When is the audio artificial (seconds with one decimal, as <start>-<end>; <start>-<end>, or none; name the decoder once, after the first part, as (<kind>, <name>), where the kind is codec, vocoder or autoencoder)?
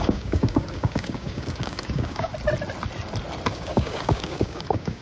0.0-2.3 (codec, DAC); 3.5-5.0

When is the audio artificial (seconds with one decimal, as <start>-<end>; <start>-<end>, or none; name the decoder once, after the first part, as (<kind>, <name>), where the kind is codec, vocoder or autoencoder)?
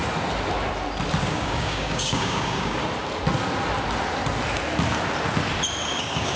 1.3-2.8 (codec, DAC); 6.0-6.4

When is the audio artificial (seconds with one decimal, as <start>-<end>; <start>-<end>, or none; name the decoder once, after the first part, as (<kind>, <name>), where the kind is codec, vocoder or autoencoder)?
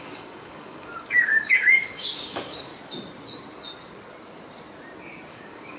0.0-2.7 (codec, DAC); 5.3-5.8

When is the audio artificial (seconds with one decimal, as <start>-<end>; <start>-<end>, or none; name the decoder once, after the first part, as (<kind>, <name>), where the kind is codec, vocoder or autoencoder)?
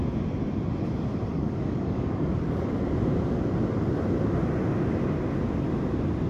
1.3-2.7 (codec, DAC)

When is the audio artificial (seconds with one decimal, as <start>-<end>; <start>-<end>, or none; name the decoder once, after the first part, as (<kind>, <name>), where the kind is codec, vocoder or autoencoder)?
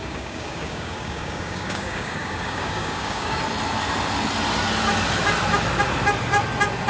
0.0-3.4 (codec, DAC)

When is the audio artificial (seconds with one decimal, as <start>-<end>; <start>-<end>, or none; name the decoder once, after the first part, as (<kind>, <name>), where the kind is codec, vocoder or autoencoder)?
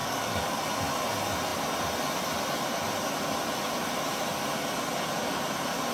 0.0-0.6 (codec, DAC)